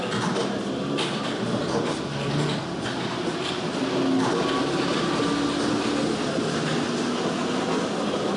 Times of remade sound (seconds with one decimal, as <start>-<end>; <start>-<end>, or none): none